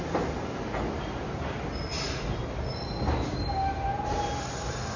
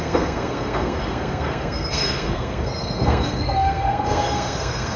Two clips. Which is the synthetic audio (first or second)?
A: second